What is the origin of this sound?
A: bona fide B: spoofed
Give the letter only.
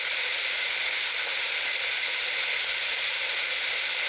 B